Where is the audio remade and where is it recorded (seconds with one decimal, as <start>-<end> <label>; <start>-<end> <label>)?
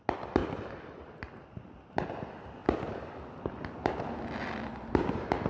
0.0-0.4 recorded; 0.4-2.1 remade; 2.1-5.5 recorded